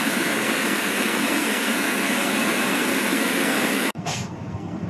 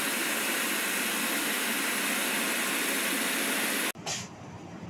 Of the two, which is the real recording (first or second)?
second